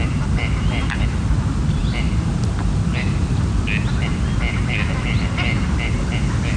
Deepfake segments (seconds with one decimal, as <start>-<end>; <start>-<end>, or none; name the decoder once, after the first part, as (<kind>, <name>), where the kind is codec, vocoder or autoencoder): none